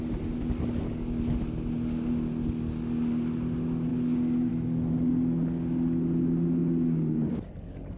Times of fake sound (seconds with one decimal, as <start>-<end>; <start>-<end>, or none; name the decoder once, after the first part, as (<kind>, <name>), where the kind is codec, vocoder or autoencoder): none